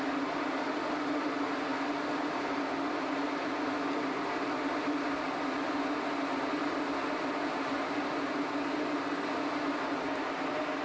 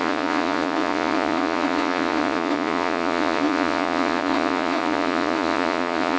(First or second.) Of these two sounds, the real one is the first